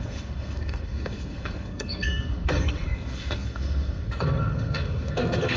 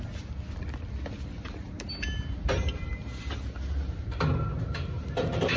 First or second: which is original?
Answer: second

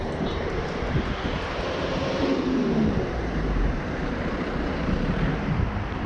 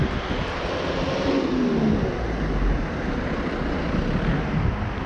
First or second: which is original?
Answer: second